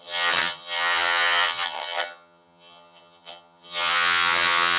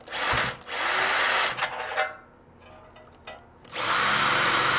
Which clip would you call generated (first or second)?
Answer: first